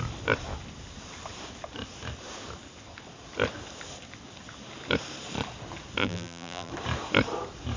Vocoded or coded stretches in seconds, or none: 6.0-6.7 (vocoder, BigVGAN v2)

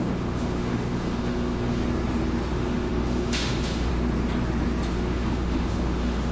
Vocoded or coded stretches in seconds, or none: 0.0-1.8 (autoencoder, DAC-VAE); 2.5-3.9; 4.9-6.3

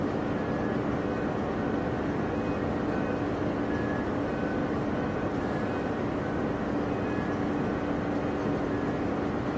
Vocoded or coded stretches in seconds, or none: 4.6-5.7 (vocoder, BigVGAN v2)

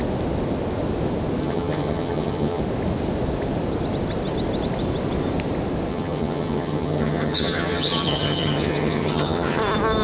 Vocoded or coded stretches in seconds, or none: 1.4-2.6 (vocoder, HiFi-GAN); 5.9-9.6

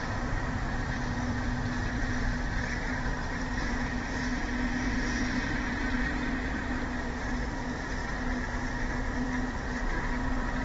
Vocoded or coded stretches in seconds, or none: 0.0-2.3 (vocoder, BigVGAN v2); 2.9-8.0; 8.9-10.6

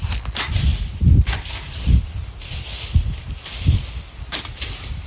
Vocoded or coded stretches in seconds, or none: none

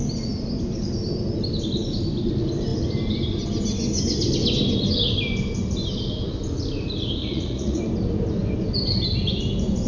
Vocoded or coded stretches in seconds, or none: 7.2-7.8 (vocoder, Vocos)